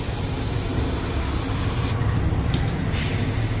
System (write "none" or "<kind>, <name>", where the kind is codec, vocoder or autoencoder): none